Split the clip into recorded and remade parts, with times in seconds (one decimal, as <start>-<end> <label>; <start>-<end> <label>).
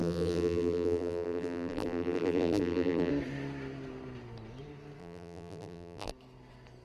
0.0-3.1 remade; 3.1-5.0 recorded; 5.0-6.1 remade; 6.1-6.8 recorded